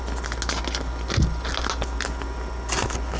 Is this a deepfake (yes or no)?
no